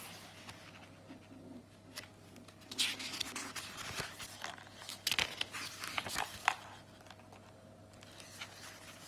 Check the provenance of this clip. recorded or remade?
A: recorded